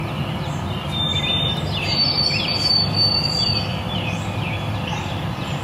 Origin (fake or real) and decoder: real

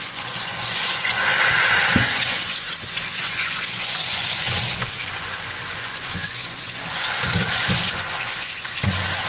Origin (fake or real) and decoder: fake, vocoder, Vocos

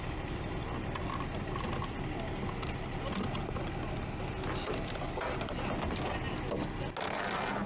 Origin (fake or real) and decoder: real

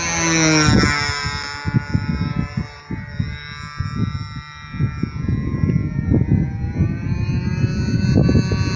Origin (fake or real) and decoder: real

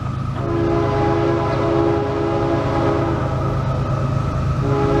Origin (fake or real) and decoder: real